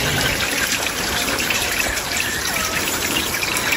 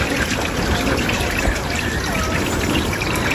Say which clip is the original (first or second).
second